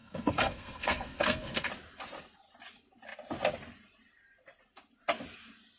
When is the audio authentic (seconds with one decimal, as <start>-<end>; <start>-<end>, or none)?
1.7-5.8